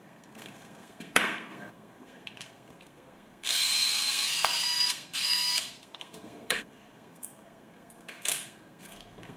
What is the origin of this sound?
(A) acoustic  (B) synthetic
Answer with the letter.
B